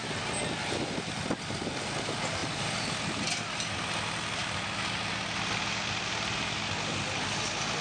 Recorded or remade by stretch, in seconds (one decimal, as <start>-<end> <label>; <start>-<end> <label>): 0.0-7.8 recorded